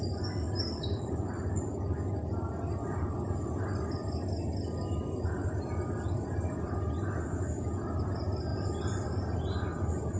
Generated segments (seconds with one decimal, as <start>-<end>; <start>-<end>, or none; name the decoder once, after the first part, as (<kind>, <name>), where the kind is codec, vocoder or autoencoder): none